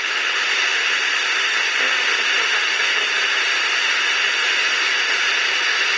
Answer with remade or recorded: recorded